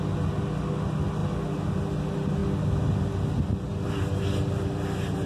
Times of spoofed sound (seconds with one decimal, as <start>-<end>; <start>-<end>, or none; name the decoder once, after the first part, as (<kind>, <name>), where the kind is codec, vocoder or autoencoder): none